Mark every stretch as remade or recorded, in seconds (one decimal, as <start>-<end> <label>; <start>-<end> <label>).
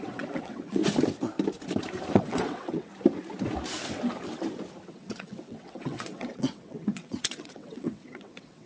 0.0-0.8 remade; 0.8-2.1 recorded; 2.1-2.9 remade; 2.9-4.9 recorded; 4.9-8.7 remade